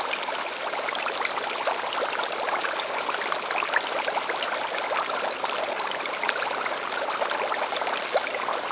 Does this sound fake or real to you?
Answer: real